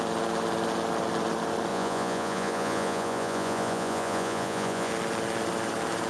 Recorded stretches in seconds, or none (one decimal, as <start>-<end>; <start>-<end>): 0.0-1.7; 4.9-6.1